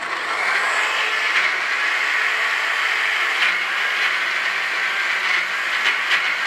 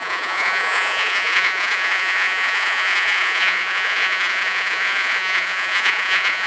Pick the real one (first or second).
first